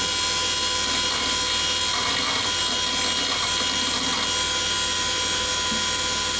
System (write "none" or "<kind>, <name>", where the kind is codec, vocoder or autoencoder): none